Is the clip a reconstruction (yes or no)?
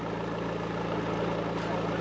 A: no